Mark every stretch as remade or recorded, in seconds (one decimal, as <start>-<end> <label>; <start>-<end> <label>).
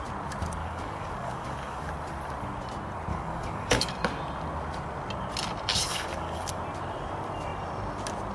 0.0-0.6 recorded; 0.6-1.9 remade; 1.9-3.1 recorded; 3.1-3.9 remade; 3.9-5.7 recorded; 5.7-6.6 remade; 6.6-8.3 recorded